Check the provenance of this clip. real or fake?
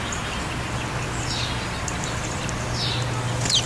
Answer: real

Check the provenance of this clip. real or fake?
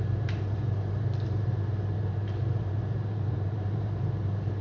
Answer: fake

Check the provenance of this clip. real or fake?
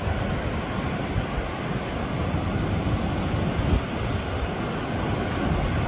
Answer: real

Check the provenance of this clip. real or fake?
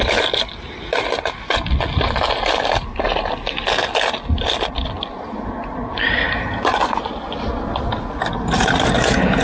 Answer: real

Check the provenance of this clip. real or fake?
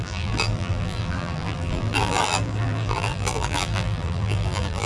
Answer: fake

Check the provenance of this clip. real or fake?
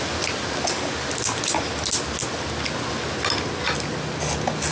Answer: real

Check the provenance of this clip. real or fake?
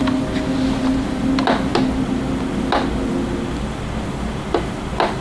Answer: real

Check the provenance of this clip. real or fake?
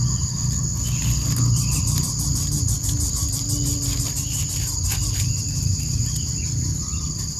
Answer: real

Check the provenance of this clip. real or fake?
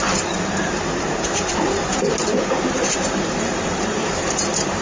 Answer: fake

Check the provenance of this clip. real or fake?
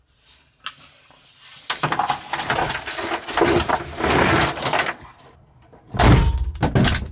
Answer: real